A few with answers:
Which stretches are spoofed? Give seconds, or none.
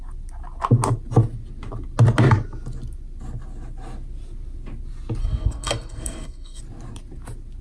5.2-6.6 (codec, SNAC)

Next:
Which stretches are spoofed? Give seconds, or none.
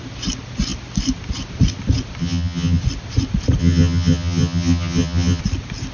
2.2-2.8 (vocoder, HiFi-GAN); 3.6-5.4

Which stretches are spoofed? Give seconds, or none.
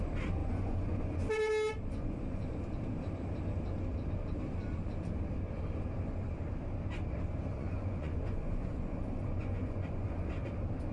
0.4-1.2 (vocoder, Vocos); 1.9-2.5; 7.5-10.3